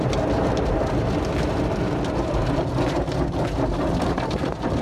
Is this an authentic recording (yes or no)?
yes